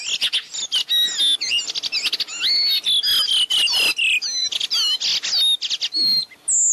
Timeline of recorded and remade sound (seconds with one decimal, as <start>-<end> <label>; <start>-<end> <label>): 0.0-6.7 recorded